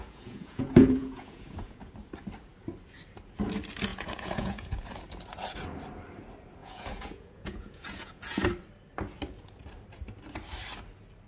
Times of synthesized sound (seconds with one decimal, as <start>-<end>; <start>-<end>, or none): 0.0-1.9; 3.9-4.9; 6.6-8.4